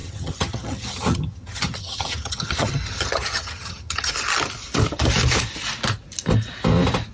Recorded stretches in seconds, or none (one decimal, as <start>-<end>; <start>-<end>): 4.1-7.1